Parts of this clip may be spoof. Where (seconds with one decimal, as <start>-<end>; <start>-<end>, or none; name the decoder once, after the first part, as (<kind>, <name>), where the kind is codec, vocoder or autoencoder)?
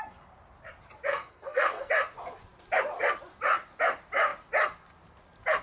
1.1-1.9 (codec, SNAC)